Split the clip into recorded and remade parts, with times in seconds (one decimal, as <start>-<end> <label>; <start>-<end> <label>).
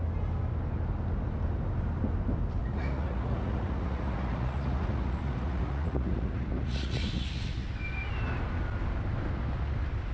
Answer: 0.0-2.6 recorded; 2.6-7.7 remade; 7.7-10.1 recorded